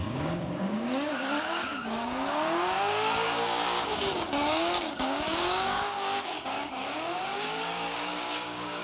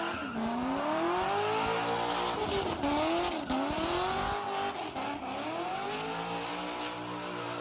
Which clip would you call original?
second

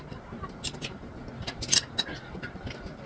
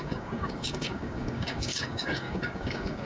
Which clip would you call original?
first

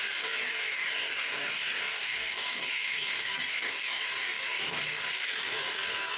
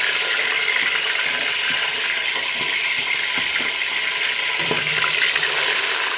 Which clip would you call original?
second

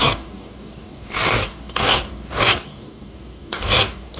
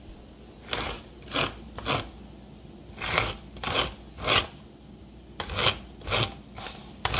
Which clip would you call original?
second